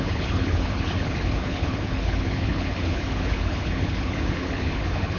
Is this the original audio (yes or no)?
no